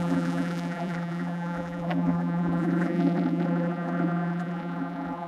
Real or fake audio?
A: fake